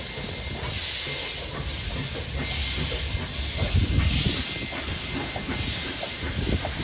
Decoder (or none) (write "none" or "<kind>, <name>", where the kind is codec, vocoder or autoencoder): none